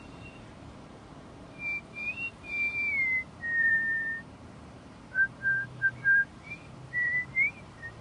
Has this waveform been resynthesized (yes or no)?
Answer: yes